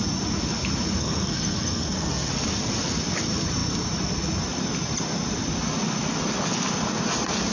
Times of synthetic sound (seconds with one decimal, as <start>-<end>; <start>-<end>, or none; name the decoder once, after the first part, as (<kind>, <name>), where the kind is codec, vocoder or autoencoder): 1.0-2.3 (codec, SNAC)